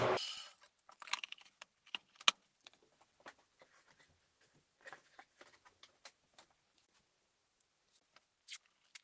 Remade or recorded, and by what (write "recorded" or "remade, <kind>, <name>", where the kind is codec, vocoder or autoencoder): recorded